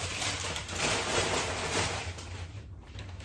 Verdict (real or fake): fake